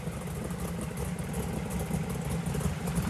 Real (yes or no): yes